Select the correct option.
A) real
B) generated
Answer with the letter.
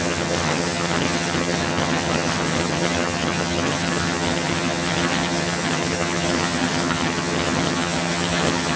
B